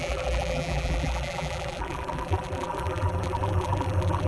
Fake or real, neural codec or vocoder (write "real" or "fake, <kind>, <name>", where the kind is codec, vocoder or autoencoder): fake, vocoder, BigVGAN v2